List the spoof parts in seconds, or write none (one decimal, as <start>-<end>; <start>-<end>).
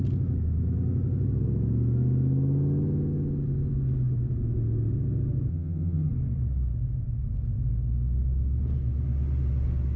5.5-6.1